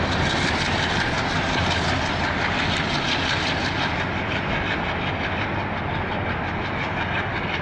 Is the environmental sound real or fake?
real